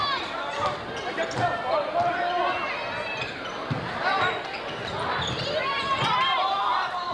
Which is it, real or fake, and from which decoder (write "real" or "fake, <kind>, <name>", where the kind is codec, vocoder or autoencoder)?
real